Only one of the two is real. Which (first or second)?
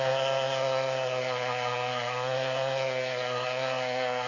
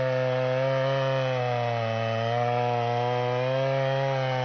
second